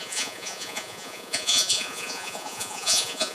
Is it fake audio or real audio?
fake